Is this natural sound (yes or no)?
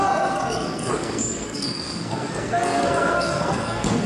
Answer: no